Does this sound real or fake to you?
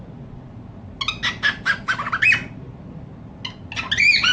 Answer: real